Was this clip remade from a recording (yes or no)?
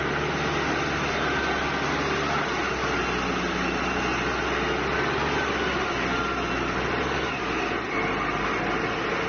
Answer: no